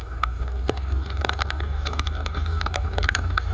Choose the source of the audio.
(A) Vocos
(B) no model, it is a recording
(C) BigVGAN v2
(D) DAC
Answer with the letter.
D